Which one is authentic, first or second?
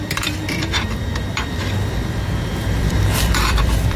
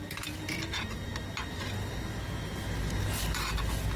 second